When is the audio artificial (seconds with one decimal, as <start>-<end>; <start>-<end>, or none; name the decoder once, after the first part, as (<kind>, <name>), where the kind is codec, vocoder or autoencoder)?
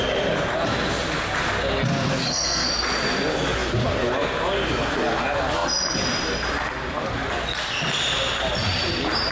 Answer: 2.2-2.7 (codec, SNAC)